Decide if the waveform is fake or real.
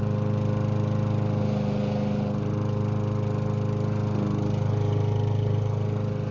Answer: real